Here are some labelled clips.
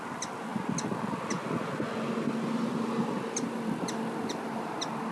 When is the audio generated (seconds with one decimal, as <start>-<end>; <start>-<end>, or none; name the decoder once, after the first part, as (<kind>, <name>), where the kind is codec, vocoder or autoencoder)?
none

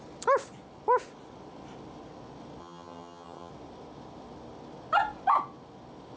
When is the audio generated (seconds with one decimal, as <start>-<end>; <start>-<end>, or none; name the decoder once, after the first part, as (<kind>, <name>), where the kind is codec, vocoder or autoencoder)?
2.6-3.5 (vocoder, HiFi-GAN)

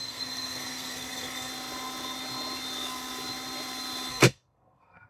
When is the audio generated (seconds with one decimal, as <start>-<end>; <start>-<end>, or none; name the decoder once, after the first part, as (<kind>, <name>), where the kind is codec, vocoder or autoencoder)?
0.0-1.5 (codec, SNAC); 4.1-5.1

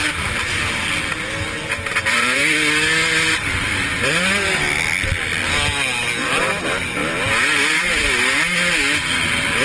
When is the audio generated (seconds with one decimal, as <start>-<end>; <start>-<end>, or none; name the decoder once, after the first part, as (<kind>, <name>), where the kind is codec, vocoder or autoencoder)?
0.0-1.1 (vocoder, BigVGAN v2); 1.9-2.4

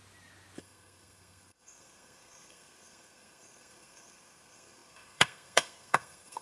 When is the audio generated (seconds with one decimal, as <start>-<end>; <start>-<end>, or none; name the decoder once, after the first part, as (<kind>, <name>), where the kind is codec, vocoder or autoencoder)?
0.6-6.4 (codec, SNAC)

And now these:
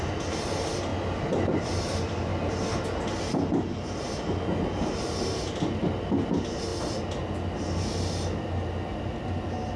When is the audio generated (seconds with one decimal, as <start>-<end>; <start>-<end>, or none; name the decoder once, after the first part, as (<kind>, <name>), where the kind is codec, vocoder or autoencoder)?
none